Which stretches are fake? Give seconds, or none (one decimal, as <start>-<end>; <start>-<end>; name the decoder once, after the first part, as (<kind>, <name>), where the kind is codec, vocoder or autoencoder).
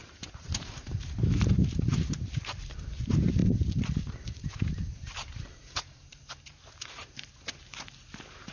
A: 0.0-8.5 (vocoder, BigVGAN v2)